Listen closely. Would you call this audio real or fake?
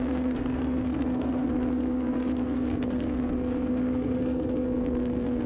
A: fake